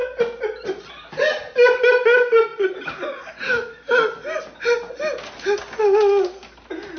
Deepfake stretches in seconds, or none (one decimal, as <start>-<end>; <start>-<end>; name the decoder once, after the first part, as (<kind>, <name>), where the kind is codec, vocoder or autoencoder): none